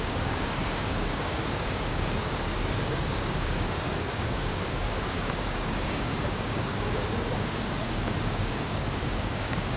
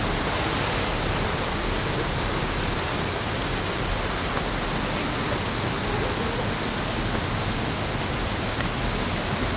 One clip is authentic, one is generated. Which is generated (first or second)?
first